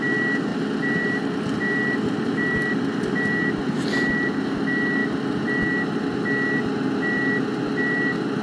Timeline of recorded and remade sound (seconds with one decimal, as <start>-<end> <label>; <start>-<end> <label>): 0.0-8.4 recorded